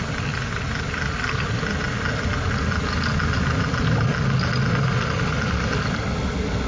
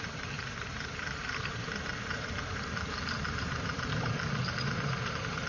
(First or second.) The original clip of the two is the first